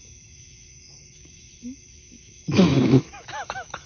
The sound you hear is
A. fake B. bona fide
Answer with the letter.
A